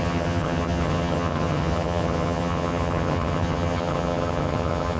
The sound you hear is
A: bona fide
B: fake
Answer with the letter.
B